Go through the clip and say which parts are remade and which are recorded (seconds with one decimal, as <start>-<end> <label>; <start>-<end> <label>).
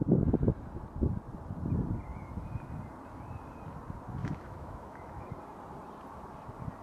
0.0-4.2 recorded; 4.2-5.3 remade; 5.3-6.8 recorded